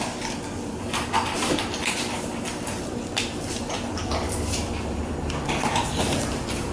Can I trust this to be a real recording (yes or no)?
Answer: no